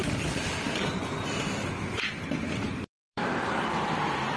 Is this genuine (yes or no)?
no